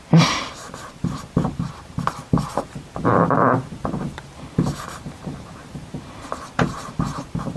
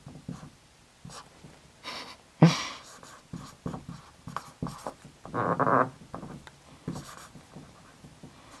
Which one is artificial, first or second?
first